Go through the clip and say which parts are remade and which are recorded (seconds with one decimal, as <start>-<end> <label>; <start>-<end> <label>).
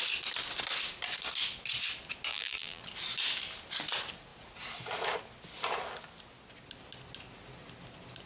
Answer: 0.0-2.3 recorded; 2.3-2.8 remade; 2.8-8.3 recorded